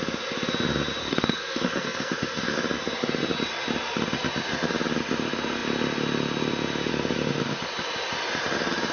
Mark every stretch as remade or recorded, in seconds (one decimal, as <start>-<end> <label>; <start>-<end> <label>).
0.0-1.0 recorded; 1.0-2.4 remade; 2.4-8.9 recorded